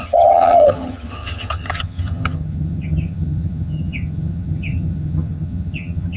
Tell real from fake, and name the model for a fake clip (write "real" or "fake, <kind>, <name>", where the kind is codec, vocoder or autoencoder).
fake, vocoder, HiFi-GAN